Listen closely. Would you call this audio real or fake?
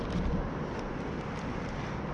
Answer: real